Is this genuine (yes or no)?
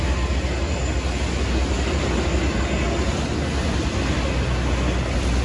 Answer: yes